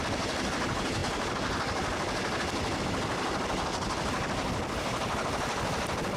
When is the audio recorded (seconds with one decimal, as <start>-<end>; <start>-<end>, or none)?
0.0-6.2